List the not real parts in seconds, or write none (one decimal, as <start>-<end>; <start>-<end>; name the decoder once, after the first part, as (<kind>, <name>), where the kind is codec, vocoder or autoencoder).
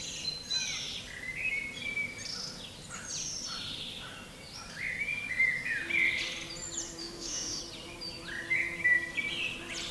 7.0-7.6 (autoencoder, DAC-VAE)